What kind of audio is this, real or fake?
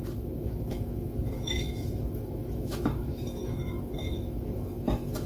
fake